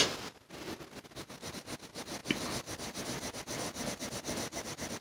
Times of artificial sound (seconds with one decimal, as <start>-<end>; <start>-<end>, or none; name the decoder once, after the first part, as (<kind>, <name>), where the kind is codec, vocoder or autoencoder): none